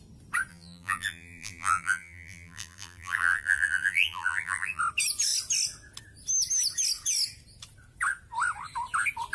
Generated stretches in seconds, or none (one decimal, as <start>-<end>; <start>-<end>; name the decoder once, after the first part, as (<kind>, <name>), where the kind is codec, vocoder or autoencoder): 0.5-4.8 (vocoder, BigVGAN v2)